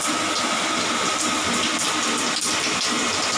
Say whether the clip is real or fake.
real